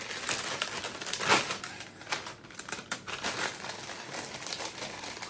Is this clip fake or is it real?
real